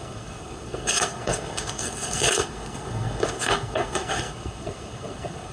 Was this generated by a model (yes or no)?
yes